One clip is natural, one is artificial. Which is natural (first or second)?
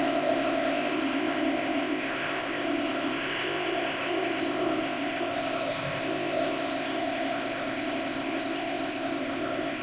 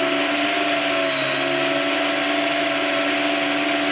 second